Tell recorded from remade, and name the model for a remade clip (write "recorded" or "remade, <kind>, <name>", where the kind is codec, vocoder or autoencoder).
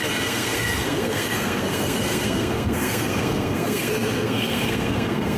remade, codec, SNAC